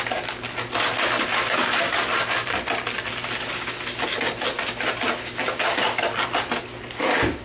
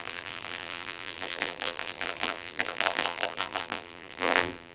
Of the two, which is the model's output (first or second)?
second